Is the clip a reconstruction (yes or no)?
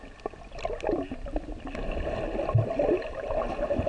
no